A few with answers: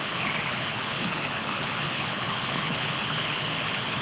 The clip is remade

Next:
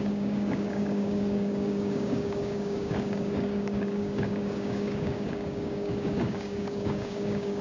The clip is remade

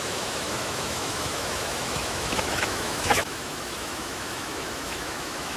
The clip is remade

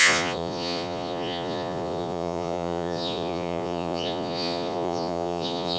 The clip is remade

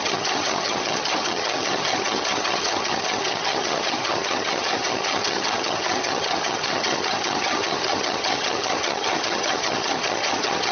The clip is remade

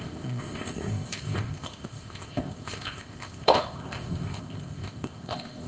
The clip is remade